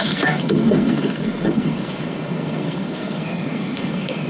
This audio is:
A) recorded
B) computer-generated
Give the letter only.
B